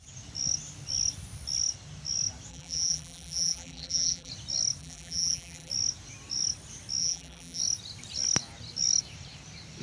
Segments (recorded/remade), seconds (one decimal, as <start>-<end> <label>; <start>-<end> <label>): 0.0-2.5 recorded; 2.5-4.3 remade; 4.3-4.8 recorded; 4.8-5.7 remade; 5.7-7.0 recorded; 7.0-7.6 remade; 7.6-9.8 recorded

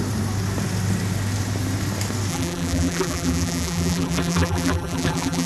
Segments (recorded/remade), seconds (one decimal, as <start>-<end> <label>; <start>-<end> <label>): 0.0-2.3 recorded; 2.3-5.5 remade